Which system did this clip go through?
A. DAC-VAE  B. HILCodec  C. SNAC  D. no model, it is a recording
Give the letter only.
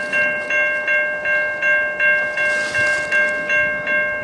D